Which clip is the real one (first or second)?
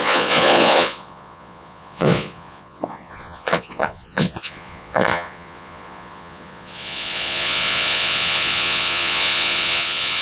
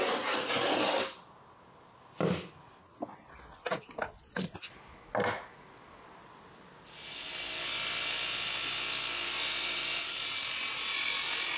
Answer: second